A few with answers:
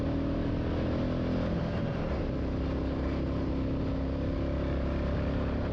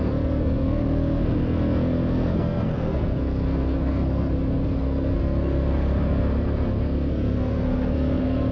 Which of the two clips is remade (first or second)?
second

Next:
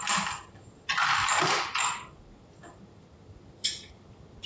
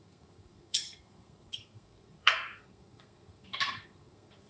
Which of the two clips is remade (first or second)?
second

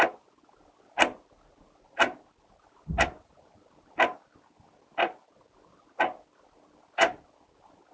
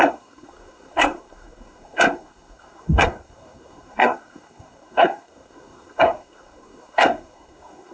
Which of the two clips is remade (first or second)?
second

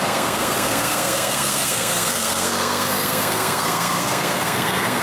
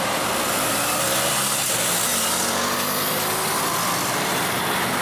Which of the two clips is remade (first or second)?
first